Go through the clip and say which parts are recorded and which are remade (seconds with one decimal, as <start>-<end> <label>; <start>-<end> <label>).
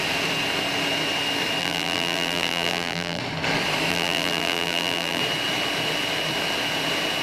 0.0-1.6 recorded; 1.6-3.2 remade; 3.2-3.9 recorded; 3.9-5.2 remade; 5.2-7.2 recorded